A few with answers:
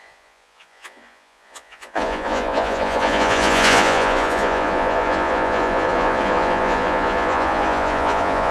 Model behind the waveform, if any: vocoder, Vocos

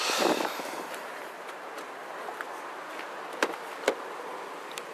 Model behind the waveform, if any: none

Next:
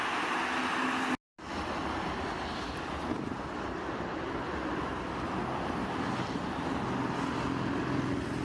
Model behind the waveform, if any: none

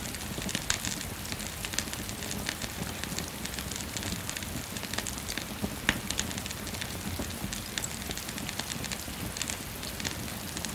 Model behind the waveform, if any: none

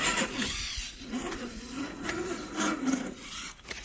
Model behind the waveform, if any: vocoder, Vocos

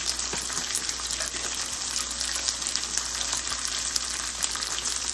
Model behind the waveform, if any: none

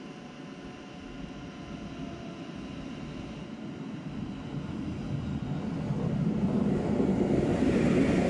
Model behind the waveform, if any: none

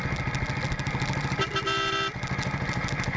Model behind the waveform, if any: none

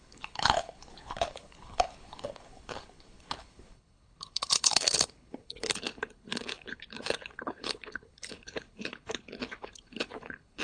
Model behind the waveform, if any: codec, HILCodec